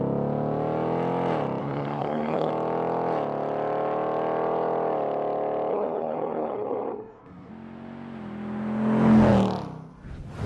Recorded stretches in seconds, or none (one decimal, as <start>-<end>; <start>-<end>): 0.0-1.6; 2.5-5.7; 7.5-10.5